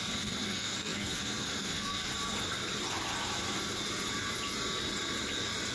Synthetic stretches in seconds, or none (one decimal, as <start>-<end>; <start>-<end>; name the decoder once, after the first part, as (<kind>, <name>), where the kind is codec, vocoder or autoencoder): 0.0-2.1 (codec, SNAC)